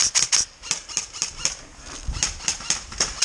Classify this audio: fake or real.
real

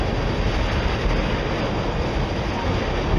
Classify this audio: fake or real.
real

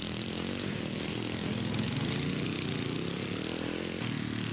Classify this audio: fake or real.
real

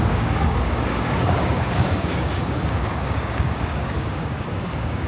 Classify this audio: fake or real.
fake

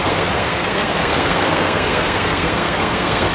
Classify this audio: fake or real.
fake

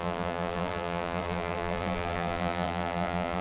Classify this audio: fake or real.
fake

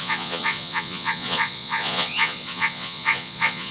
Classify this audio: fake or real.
fake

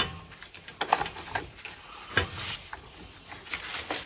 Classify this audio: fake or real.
real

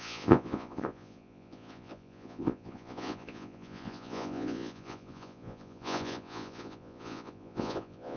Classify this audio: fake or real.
fake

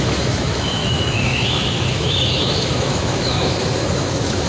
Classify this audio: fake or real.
fake